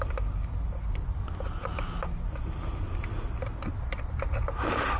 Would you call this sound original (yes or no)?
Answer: yes